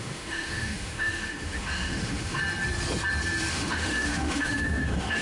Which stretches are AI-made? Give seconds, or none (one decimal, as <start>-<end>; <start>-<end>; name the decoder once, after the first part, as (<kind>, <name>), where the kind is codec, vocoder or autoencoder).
0.0-2.4 (autoencoder, DAC-VAE); 3.5-5.2